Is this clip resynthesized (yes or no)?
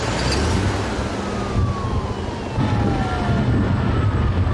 no